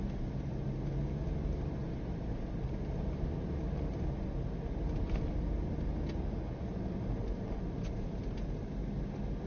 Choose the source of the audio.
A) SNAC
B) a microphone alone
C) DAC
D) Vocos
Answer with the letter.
B